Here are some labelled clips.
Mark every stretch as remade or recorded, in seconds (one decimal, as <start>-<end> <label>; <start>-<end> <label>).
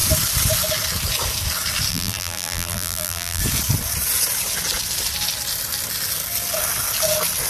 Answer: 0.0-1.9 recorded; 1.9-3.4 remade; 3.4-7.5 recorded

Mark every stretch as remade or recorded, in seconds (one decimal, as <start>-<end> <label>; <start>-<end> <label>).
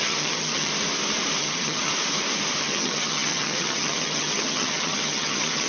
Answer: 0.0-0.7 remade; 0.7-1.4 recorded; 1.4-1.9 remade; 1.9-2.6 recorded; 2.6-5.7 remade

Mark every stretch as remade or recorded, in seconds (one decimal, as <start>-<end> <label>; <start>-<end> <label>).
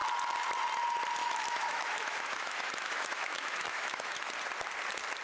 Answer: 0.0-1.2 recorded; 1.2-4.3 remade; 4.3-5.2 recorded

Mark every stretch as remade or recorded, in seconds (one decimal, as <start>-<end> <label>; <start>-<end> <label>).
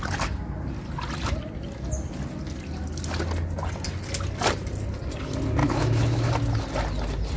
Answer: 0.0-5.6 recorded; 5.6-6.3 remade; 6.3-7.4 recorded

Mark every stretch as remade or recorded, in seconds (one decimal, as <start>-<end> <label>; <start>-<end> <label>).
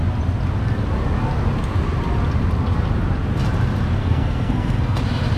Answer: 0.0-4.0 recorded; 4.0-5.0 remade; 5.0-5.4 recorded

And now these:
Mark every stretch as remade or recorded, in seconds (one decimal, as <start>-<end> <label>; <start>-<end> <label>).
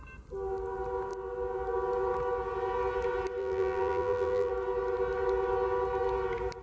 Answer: 0.0-3.4 recorded; 3.4-4.5 remade; 4.5-6.6 recorded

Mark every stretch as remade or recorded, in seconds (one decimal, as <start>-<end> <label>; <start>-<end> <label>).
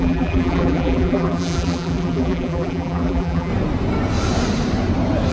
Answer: 0.0-3.5 remade; 3.5-5.3 recorded